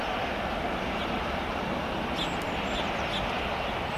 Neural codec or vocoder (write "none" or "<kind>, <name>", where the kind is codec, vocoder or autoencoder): none